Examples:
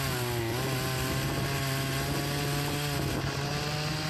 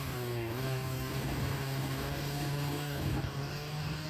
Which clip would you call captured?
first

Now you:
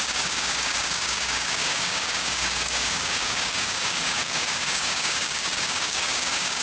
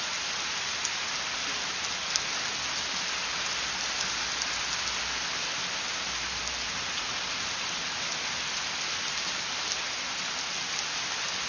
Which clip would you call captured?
second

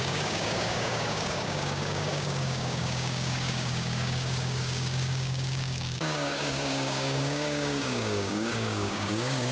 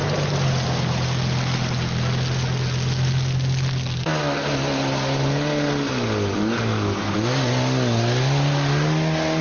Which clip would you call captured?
second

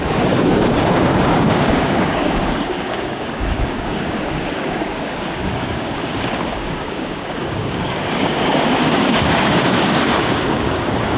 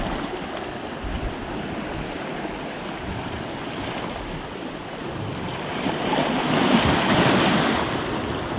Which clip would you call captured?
second